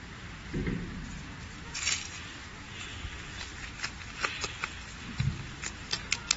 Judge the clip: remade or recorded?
recorded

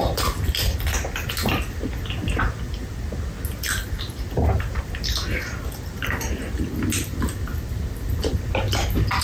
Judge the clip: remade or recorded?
recorded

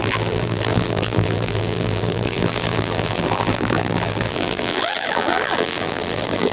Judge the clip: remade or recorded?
remade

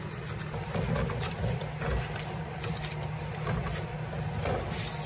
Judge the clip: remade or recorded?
recorded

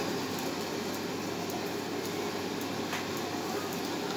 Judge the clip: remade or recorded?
recorded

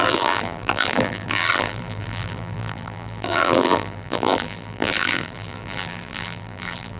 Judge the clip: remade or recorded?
remade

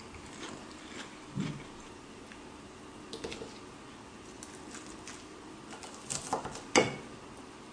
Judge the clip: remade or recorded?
recorded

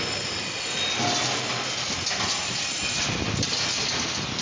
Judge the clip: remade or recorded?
recorded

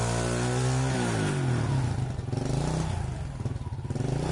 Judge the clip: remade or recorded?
recorded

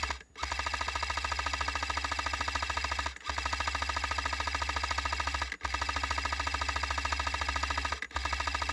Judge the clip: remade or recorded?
recorded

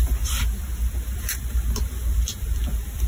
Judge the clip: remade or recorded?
remade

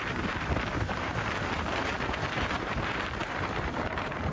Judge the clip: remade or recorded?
remade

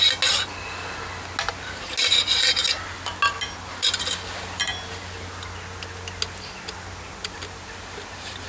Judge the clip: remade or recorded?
recorded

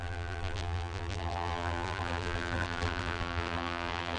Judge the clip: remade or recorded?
remade